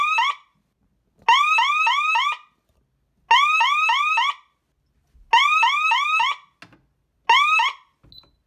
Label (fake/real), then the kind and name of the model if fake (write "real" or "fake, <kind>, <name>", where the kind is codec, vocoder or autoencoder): real